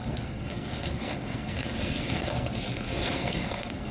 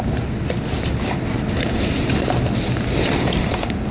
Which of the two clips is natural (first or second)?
second